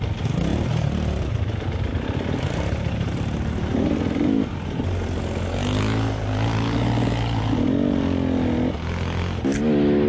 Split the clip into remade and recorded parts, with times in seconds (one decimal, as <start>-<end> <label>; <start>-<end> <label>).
0.0-0.5 recorded; 0.5-5.2 remade; 5.2-10.1 recorded